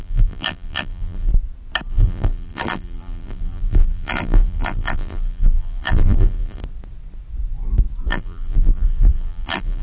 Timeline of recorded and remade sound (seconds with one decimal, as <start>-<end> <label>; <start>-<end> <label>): 0.0-1.3 remade; 1.3-1.9 recorded; 1.9-6.6 remade; 6.6-8.1 recorded; 8.1-9.8 remade